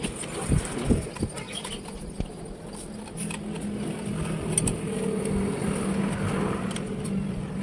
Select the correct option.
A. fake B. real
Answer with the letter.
B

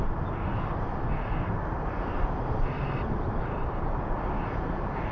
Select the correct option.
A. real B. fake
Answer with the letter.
A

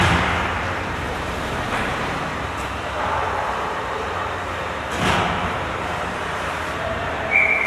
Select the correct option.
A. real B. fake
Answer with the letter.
B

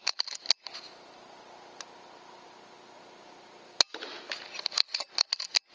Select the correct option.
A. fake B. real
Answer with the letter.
B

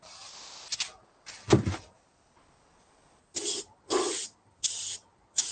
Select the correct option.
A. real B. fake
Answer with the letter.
A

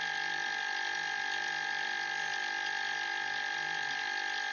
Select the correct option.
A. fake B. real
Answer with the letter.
A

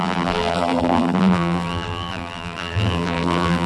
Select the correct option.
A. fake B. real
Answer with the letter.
A